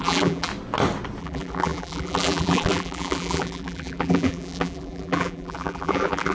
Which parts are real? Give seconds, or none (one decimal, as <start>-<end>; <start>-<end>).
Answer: 0.5-1.2